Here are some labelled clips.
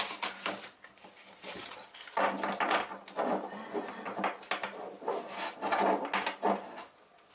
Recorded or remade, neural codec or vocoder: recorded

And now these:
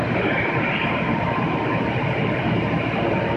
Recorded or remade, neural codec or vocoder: remade, vocoder, BigVGAN v2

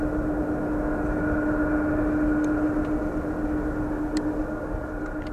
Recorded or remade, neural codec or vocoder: recorded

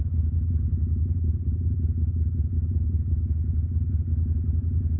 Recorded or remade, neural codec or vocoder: remade, vocoder, BigVGAN v2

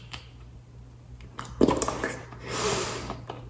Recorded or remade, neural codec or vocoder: recorded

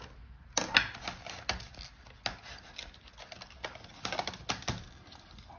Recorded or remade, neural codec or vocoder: recorded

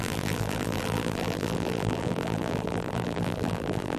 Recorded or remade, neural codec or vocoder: remade, vocoder, BigVGAN v2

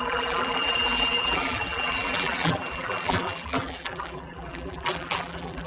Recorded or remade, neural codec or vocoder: remade, vocoder, BigVGAN v2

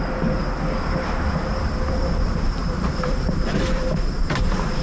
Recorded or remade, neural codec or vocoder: remade, vocoder, BigVGAN v2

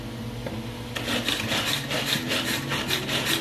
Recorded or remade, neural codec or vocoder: recorded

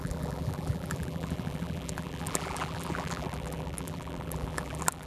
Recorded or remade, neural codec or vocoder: remade, vocoder, BigVGAN v2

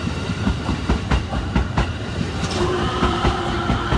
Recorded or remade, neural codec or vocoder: remade, vocoder, BigVGAN v2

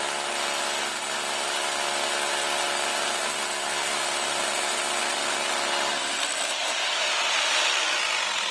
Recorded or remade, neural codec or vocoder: recorded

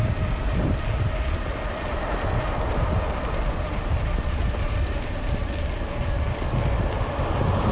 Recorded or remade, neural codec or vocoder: recorded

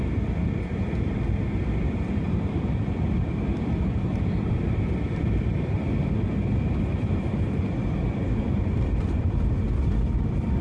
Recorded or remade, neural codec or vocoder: remade, vocoder, BigVGAN v2